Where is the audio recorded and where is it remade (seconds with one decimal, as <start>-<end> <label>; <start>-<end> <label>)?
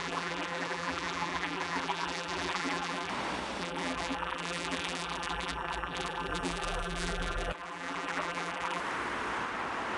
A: 0.0-3.1 remade; 3.1-3.6 recorded; 3.6-8.8 remade; 8.8-10.0 recorded